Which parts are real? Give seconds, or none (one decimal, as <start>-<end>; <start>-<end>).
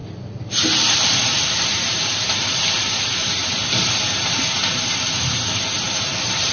0.0-0.9; 3.4-4.1